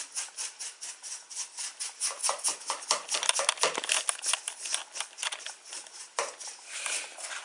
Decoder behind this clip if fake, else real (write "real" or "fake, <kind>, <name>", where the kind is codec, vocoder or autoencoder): real